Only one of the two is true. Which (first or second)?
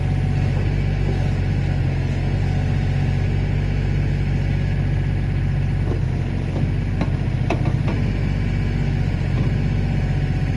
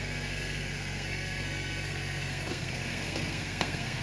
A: first